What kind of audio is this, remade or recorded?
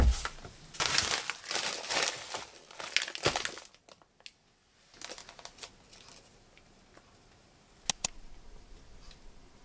recorded